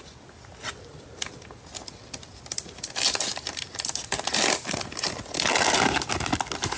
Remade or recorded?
recorded